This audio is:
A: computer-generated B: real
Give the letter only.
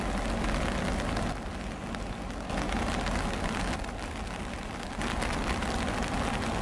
B